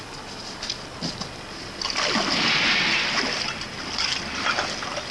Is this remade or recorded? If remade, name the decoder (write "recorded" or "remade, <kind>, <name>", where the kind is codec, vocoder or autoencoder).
recorded